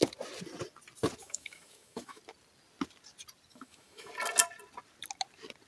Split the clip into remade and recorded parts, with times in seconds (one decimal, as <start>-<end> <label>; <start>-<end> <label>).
0.0-1.2 recorded; 1.2-2.2 remade; 2.2-3.5 recorded; 3.5-4.1 remade; 4.1-5.7 recorded